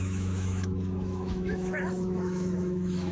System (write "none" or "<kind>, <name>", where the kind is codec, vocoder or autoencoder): autoencoder, DAC-VAE